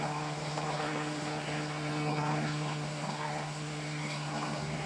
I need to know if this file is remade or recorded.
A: remade